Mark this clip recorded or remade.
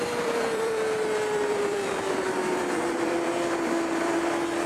remade